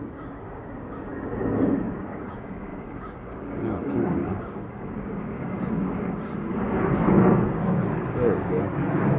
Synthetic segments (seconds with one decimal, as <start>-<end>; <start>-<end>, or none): 0.0-9.2